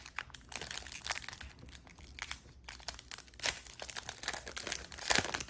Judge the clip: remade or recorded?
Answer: recorded